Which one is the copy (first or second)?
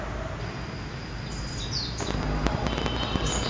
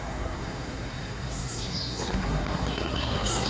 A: second